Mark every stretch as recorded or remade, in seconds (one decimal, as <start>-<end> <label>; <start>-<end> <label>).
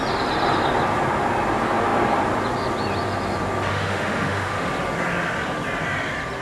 0.0-3.7 recorded; 3.7-4.7 remade; 4.7-6.4 recorded